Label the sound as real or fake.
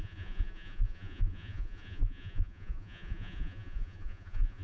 fake